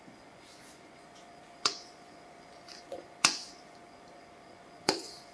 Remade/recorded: remade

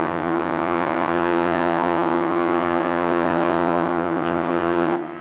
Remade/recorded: remade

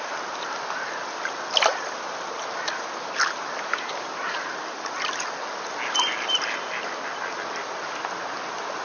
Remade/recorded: recorded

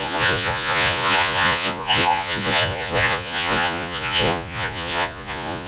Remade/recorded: remade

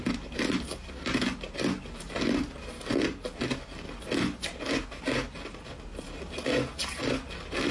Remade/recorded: recorded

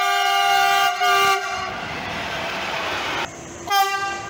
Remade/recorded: remade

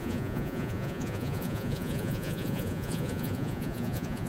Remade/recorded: remade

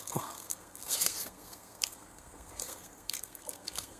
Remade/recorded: remade